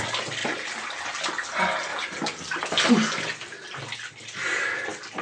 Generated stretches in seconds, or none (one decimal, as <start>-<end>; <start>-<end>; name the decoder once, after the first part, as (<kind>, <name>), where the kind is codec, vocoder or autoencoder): none